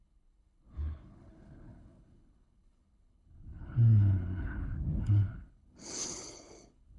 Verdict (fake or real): fake